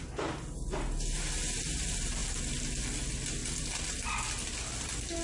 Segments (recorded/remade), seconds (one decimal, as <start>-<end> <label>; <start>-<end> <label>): 0.0-5.2 recorded